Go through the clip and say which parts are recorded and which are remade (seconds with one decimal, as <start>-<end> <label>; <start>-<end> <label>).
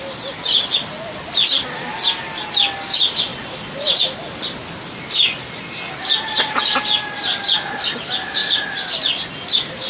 0.0-9.9 recorded